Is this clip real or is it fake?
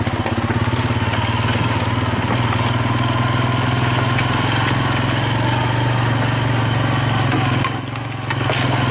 real